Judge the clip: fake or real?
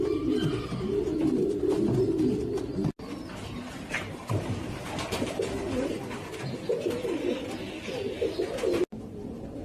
real